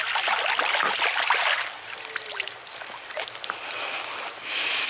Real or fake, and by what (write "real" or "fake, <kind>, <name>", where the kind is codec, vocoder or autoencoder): real